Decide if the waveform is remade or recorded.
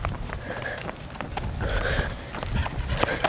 recorded